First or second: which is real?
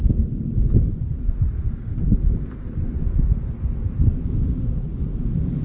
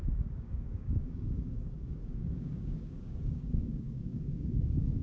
first